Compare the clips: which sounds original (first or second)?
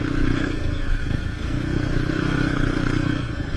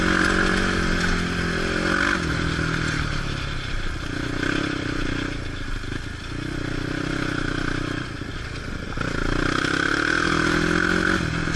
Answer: second